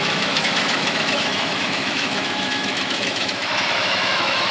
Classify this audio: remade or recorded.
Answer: remade